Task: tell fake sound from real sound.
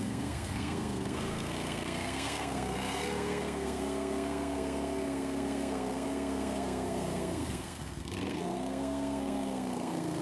fake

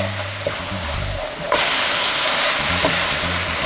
fake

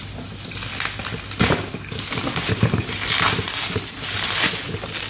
real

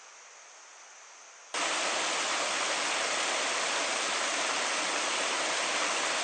real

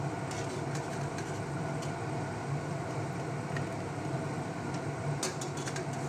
real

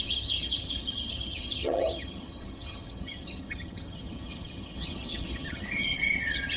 fake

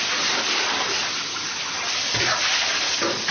real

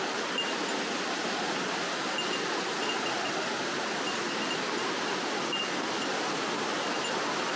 real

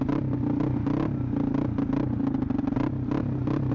real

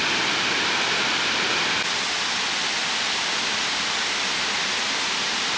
fake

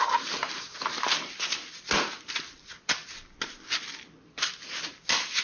real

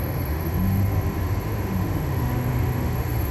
fake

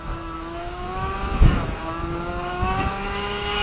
fake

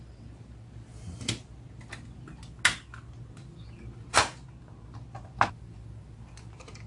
real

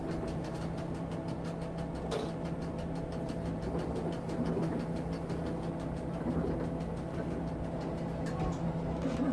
real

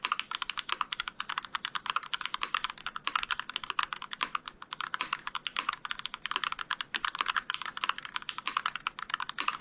fake